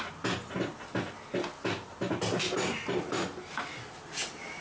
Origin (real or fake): real